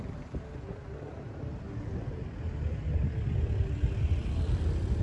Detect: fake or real real